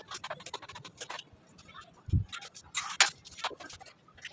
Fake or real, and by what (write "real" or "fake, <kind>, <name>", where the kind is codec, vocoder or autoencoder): real